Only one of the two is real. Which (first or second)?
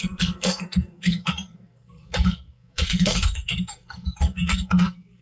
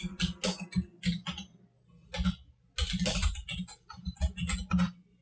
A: second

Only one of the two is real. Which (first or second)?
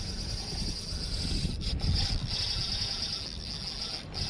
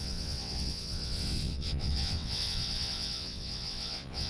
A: first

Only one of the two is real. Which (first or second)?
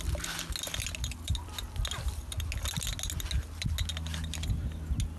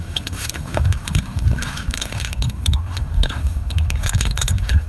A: first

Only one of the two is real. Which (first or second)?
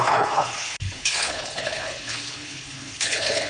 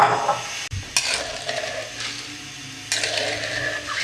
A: second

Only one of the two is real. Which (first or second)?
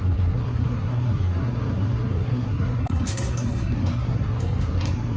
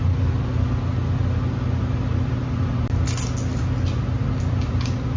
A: second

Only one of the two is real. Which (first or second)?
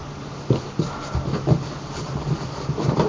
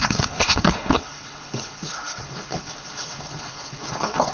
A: first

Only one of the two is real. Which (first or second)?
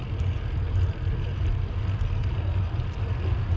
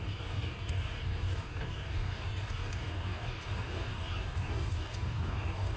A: first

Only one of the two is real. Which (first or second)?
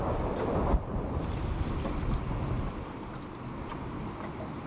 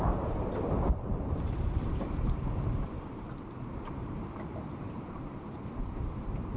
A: first